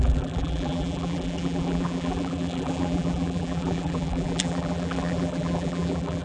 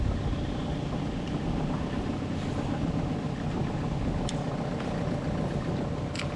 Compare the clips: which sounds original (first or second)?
second